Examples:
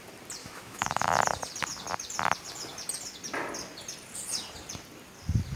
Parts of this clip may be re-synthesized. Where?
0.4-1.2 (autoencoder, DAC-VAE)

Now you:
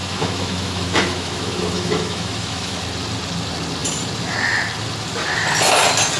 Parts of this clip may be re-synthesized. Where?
0.0-2.8 (autoencoder, DAC-VAE)

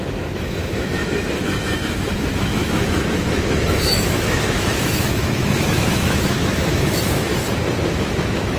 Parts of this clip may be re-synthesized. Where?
0.0-7.3 (autoencoder, DAC-VAE); 7.9-8.6

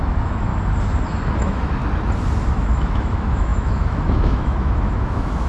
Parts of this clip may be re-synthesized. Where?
0.0-0.5 (autoencoder, DAC-VAE); 1.4-1.8; 2.5-5.5

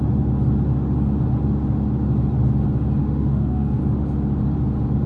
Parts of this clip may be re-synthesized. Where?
3.0-3.8 (autoencoder, DAC-VAE)

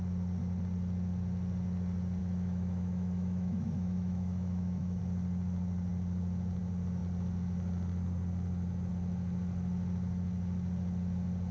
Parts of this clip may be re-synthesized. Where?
2.2-5.0 (autoencoder, DAC-VAE)

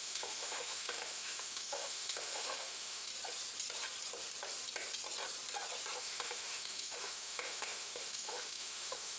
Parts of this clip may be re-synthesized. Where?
0.0-3.1 (autoencoder, DAC-VAE); 6.0-9.2